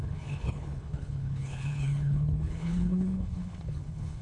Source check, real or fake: fake